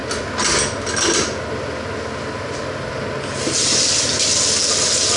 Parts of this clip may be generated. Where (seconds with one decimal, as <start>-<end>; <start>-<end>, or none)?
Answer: none